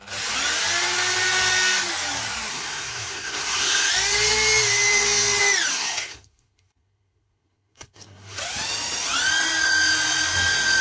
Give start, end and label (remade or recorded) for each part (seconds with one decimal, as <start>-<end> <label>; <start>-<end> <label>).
0.0-2.5 recorded; 2.5-3.9 remade; 3.9-5.7 recorded; 5.7-8.4 remade; 8.4-10.8 recorded